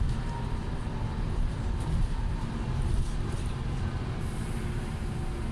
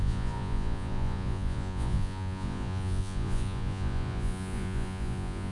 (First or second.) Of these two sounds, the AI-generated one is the second